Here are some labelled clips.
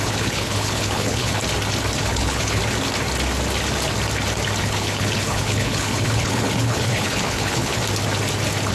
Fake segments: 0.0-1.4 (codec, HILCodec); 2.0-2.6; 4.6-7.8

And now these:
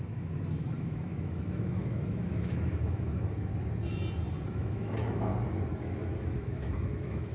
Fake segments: 0.0-3.5 (autoencoder, DAC-VAE); 4.5-5.3; 5.8-7.3

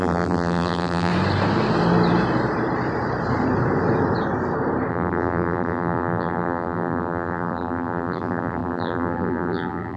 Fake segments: 0.0-1.1 (vocoder, BigVGAN v2); 4.9-10.0

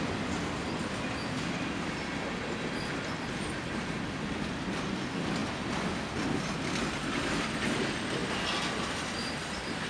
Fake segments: 5.4-6.0 (vocoder, BigVGAN v2)

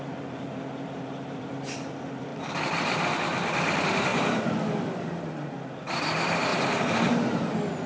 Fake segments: 0.0-4.1 (vocoder, BigVGAN v2); 5.9-6.5

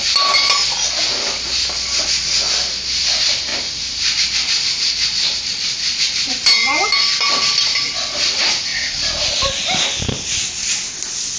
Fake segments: 3.5-6.3 (vocoder, BigVGAN v2); 8.7-9.3

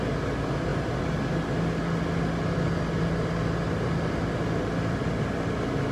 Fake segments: none

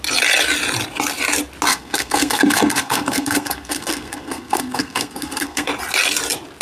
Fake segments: 1.7-5.7 (codec, SNAC)